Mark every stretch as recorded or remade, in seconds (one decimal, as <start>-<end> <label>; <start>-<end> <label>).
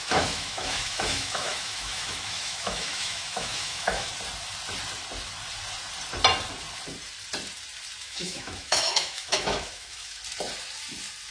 0.0-4.1 remade; 4.1-8.0 recorded; 8.0-10.2 remade; 10.2-11.3 recorded